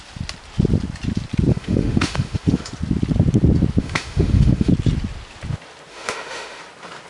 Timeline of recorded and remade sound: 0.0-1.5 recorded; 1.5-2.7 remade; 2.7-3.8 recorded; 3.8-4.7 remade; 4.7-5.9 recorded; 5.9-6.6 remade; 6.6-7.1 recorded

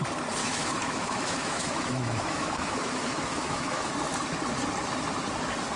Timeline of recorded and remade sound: 0.0-0.4 recorded; 0.4-3.9 remade; 3.9-5.8 recorded

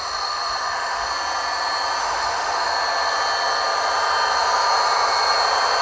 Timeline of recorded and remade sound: 0.0-1.1 remade; 1.1-2.0 recorded; 2.0-2.7 remade; 2.7-5.8 recorded

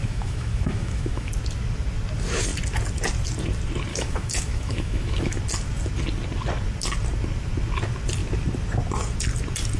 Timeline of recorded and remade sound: 0.0-1.3 remade; 1.3-3.9 recorded; 3.9-5.4 remade; 5.4-9.8 recorded

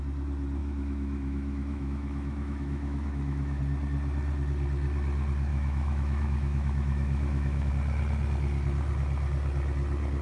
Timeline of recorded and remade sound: 0.0-0.6 recorded; 0.6-3.6 remade; 3.6-5.5 recorded; 5.5-7.7 remade; 7.7-10.2 recorded

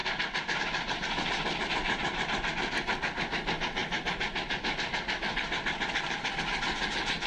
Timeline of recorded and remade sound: 0.0-7.3 recorded

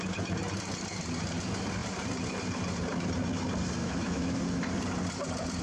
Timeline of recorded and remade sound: 0.0-3.8 recorded; 3.8-4.4 remade; 4.4-5.6 recorded

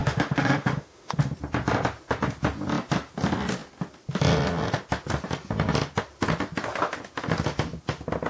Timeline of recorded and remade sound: 0.0-1.2 remade; 1.2-8.3 recorded